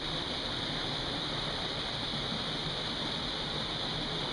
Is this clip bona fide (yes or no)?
yes